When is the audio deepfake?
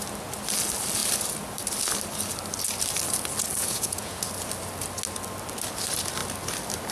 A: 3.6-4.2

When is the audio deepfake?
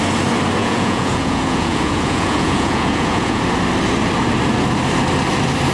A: 0.6-3.4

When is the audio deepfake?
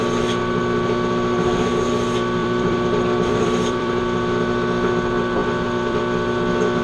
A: 2.4-4.0; 5.4-6.0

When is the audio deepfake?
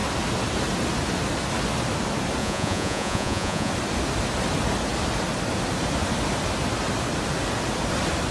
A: 2.4-3.7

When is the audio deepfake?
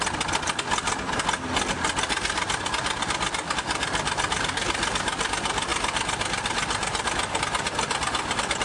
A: none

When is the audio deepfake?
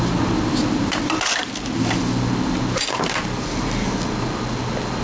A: none